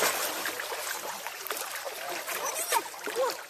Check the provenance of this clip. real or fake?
real